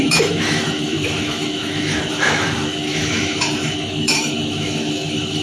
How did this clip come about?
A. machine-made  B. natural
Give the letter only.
A